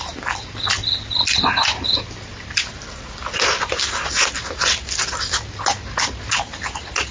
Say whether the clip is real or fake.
real